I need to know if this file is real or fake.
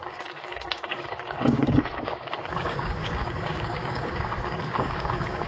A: fake